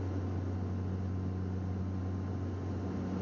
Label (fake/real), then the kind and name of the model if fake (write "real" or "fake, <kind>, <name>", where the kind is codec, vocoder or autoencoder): real